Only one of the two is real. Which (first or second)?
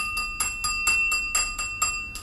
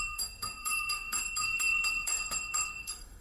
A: first